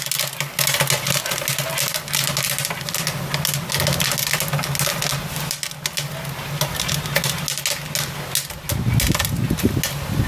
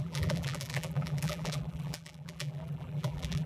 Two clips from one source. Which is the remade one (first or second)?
second